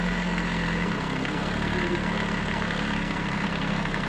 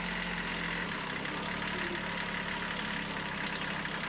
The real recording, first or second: second